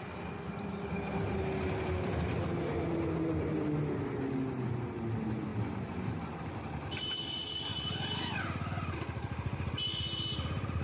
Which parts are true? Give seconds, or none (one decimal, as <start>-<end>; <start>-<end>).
0.0-7.7; 8.4-10.8